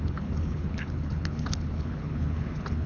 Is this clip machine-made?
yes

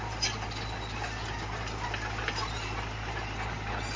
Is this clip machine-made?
no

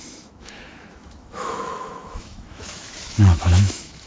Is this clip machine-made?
yes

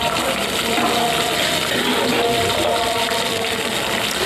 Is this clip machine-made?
no